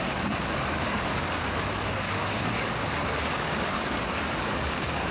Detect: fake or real fake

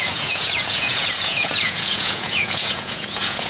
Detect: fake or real fake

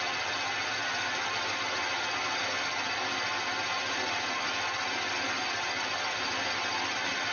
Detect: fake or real real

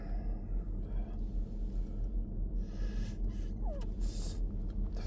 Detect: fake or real real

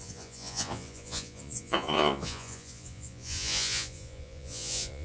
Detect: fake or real fake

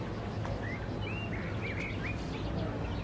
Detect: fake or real real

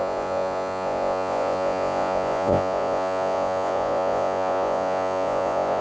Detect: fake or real fake